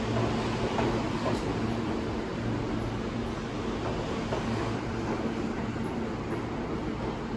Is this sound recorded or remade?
recorded